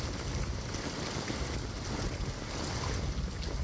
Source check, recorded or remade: recorded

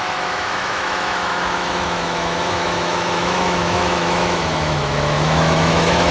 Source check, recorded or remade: remade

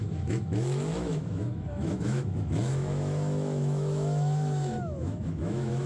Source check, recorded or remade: remade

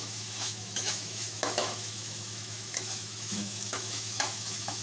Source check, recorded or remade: remade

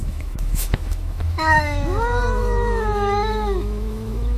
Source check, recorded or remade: remade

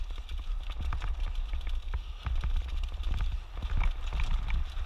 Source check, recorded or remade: recorded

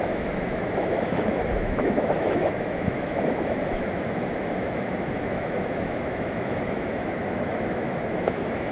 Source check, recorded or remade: remade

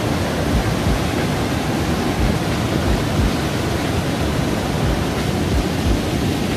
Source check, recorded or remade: recorded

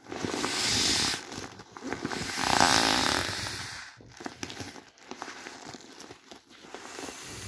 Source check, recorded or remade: recorded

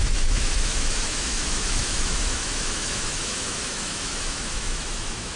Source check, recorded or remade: remade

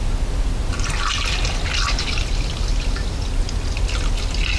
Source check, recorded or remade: recorded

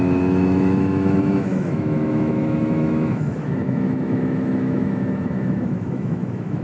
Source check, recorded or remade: remade